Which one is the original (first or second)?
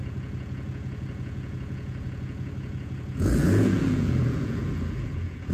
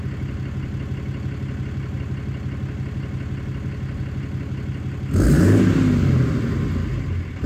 second